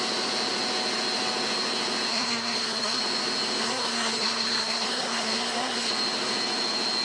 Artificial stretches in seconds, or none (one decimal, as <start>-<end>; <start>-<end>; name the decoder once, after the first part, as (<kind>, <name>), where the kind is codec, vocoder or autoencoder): 2.1-3.0 (codec, SNAC); 3.6-5.9